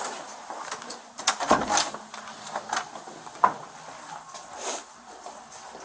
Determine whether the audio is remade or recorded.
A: recorded